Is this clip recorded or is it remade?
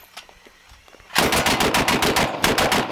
recorded